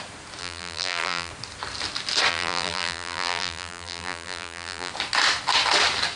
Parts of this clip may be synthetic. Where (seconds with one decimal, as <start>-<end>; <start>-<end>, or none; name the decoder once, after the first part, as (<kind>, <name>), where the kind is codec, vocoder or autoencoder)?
0.4-1.3 (vocoder, BigVGAN v2); 2.3-4.9